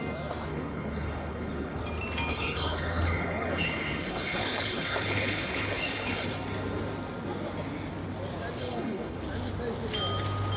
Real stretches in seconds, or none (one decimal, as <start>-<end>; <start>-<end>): 0.0-0.5; 1.8-2.3; 6.3-8.6; 9.2-10.6